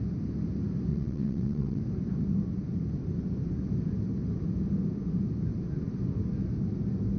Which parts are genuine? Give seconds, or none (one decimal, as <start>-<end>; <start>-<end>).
0.0-0.9; 1.8-7.2